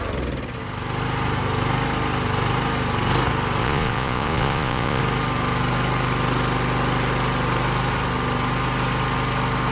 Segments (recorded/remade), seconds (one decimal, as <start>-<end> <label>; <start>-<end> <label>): 0.0-3.6 recorded; 3.6-5.0 remade; 5.0-9.7 recorded